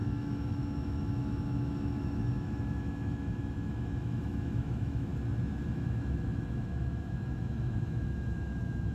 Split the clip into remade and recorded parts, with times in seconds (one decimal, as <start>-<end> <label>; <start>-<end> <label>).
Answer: 0.0-5.1 remade; 5.1-5.6 recorded; 5.6-8.9 remade